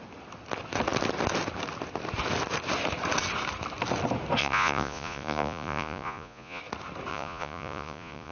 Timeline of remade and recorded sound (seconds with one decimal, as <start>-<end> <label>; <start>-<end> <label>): 0.0-4.4 recorded; 4.4-6.6 remade; 6.6-7.1 recorded; 7.1-8.3 remade